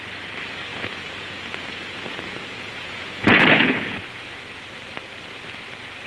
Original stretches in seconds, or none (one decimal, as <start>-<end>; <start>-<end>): 0.0-0.7; 4.4-6.1